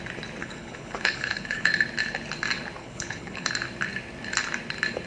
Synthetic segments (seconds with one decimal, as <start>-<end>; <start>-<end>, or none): 0.4-1.7; 2.8-3.5